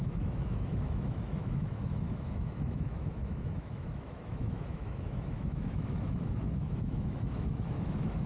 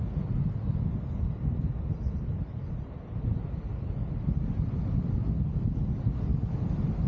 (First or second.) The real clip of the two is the second